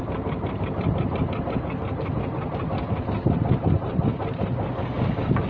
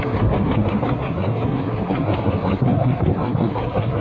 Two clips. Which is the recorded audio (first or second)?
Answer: first